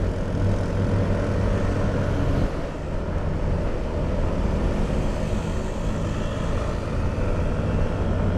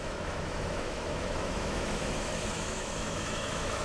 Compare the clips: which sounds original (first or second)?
first